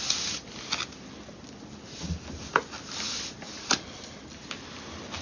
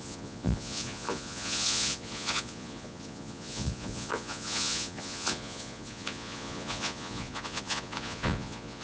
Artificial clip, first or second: second